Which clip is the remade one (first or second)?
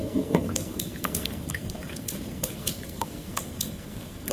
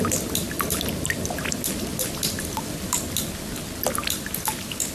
first